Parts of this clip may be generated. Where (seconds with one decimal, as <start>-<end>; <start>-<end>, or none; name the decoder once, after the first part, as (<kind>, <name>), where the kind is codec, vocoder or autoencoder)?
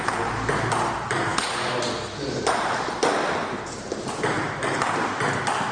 none